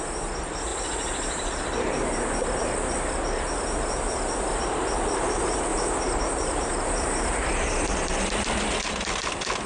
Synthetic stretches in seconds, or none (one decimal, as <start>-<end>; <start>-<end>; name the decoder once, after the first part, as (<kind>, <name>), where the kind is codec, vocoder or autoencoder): 0.7-1.5 (vocoder, BigVGAN v2); 5.7-7.9